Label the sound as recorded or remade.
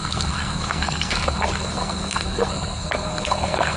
remade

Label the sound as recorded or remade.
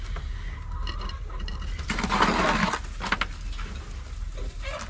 recorded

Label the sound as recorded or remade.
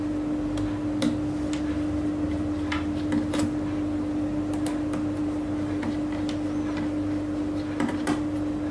recorded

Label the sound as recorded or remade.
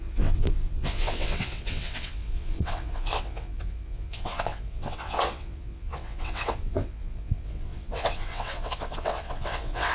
remade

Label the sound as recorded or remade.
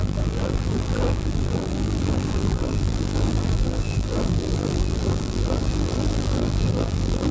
remade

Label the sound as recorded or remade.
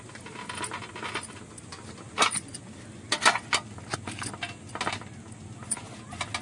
recorded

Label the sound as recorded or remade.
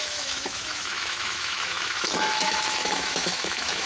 remade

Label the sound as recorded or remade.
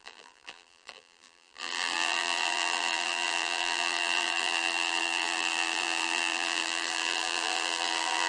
remade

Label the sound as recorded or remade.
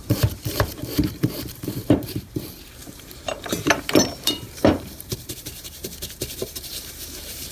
remade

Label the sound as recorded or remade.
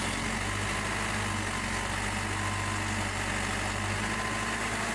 recorded